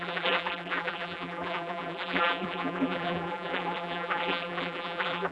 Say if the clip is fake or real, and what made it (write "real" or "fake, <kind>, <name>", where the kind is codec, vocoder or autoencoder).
fake, vocoder, BigVGAN v2